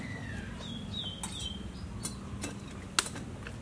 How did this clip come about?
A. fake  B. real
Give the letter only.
B